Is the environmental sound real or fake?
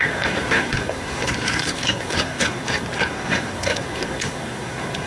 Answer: fake